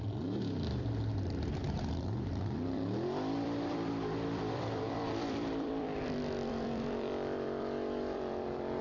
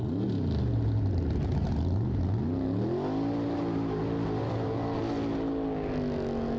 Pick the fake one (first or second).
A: first